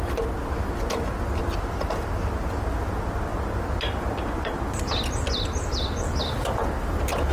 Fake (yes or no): no